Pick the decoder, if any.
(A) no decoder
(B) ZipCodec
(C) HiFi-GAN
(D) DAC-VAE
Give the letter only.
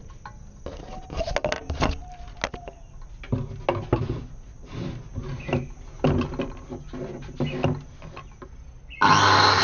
A